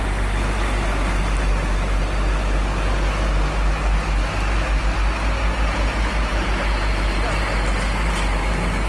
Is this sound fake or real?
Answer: real